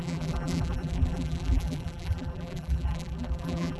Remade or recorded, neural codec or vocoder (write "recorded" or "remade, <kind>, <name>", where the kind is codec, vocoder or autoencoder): remade, vocoder, BigVGAN v2